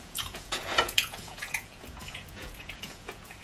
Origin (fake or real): fake